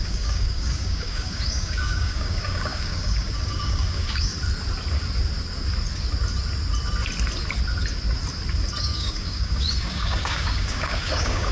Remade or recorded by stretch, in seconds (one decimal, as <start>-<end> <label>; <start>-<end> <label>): 0.0-4.3 remade; 4.3-8.8 recorded; 8.8-11.5 remade